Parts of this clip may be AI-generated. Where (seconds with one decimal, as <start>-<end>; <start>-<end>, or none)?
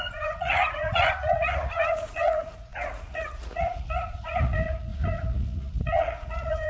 0.0-6.7